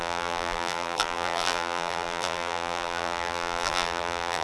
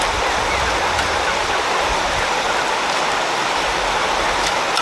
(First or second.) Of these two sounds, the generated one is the first